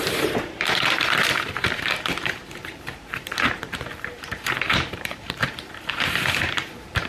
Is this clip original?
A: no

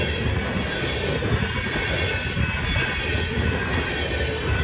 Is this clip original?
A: yes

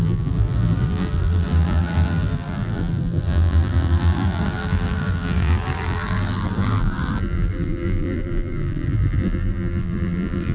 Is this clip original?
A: no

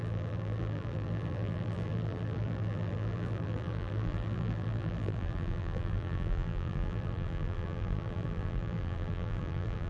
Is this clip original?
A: no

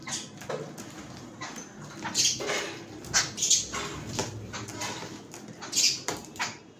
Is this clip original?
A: yes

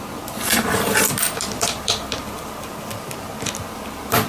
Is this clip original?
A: no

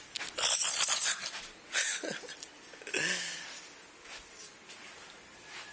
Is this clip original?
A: yes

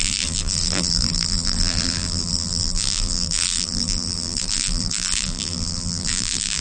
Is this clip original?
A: no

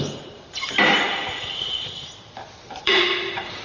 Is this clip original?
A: no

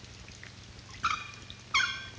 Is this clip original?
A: yes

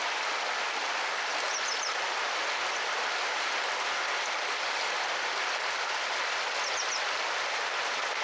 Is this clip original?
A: yes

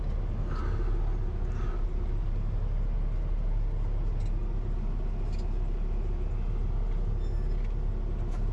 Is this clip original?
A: yes